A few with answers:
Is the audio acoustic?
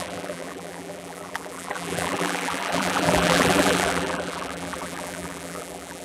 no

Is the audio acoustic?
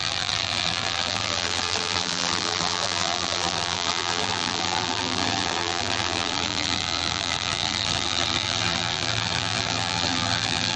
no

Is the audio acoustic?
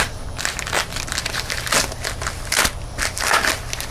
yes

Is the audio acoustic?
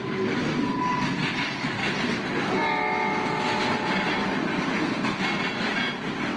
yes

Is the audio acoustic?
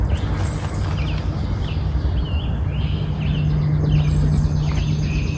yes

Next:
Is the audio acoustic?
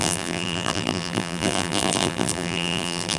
no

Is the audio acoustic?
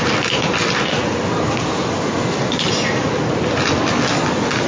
yes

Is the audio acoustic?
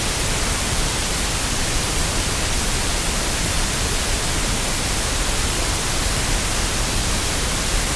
no